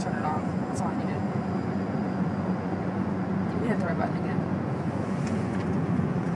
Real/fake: fake